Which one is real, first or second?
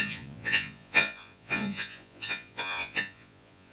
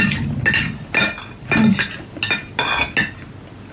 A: second